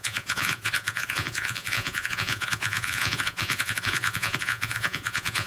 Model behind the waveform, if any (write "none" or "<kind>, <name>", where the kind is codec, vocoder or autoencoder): vocoder, Vocos